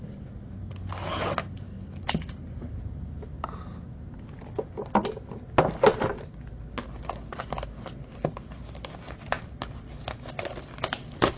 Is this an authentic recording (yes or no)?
yes